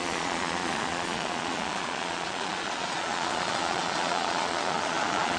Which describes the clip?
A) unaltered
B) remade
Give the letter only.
B